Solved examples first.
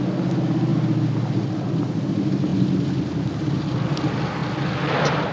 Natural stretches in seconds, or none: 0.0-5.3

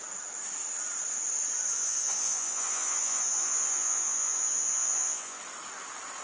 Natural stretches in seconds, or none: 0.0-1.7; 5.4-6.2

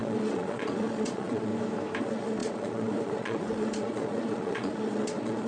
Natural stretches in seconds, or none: 1.5-2.0